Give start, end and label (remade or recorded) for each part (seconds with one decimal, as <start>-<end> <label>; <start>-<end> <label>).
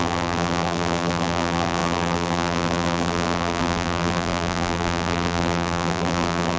0.0-6.6 remade